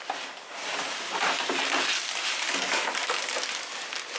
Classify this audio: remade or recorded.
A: recorded